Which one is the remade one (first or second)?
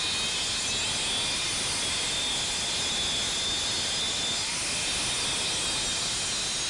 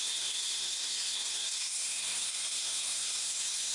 second